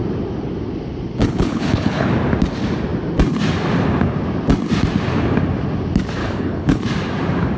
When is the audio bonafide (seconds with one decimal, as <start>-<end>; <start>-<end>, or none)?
0.0-1.2; 2.1-6.2; 6.8-7.6

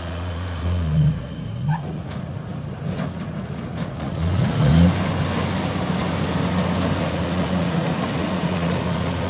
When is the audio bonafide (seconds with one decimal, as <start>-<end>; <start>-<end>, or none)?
2.5-3.0; 4.7-7.0

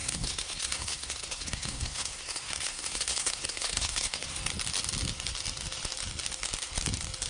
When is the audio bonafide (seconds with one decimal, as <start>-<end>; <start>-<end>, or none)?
4.4-7.3

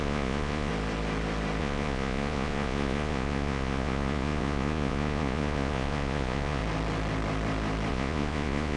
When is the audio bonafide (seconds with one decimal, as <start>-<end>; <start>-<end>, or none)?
0.7-1.6; 6.6-7.9

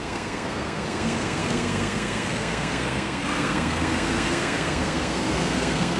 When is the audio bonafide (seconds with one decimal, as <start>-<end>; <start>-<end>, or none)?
none

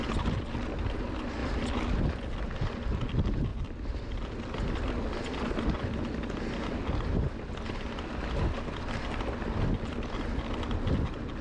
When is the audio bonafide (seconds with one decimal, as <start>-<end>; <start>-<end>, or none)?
0.0-11.4